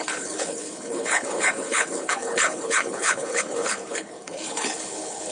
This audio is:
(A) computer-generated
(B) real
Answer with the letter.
A